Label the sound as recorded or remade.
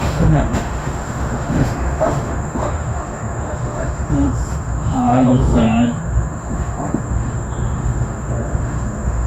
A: remade